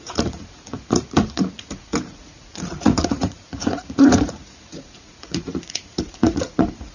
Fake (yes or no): yes